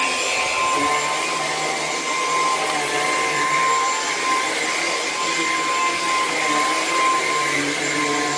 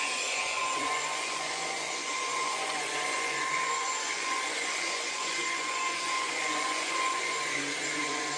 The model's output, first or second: second